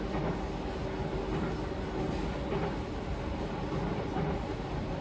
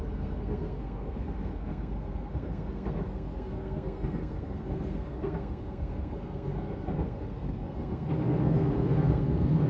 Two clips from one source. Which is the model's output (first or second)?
second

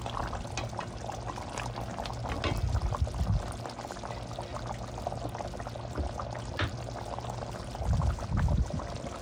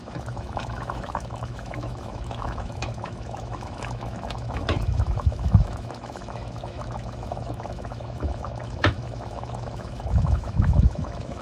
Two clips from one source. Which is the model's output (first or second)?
second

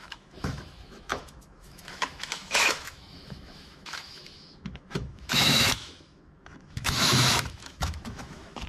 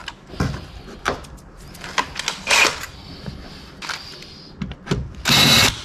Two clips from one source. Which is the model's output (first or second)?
first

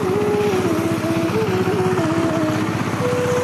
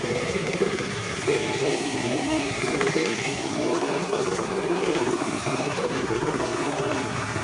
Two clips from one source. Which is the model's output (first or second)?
second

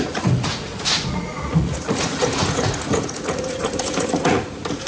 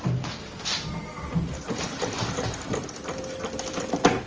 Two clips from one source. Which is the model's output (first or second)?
first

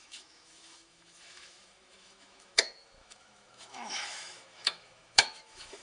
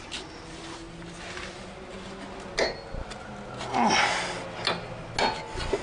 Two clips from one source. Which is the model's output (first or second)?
first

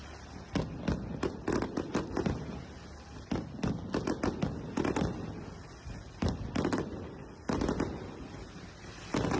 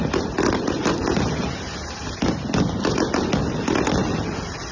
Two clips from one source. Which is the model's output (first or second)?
second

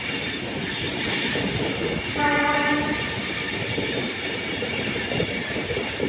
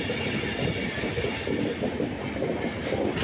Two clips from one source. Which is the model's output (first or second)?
first